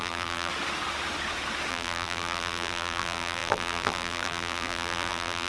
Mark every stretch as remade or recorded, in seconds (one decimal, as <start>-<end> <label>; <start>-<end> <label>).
0.0-0.5 remade; 0.5-1.7 recorded; 1.7-5.5 remade